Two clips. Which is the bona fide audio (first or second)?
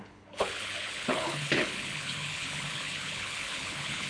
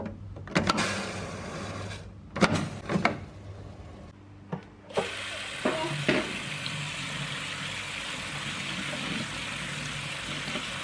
second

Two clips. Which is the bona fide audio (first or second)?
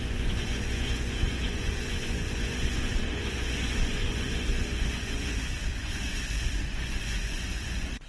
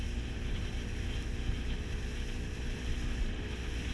second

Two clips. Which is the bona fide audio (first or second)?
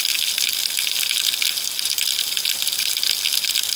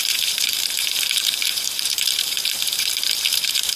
first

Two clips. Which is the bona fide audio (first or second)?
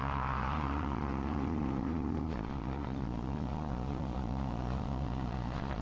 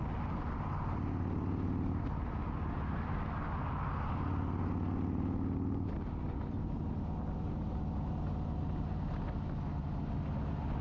second